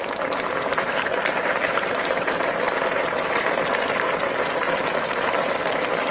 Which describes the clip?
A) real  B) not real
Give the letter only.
B